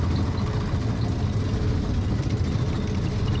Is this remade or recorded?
recorded